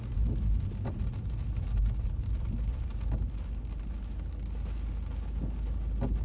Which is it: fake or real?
real